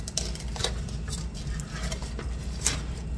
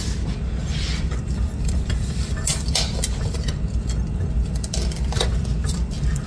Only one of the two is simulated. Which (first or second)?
second